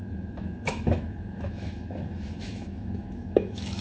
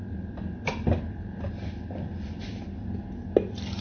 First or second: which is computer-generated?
first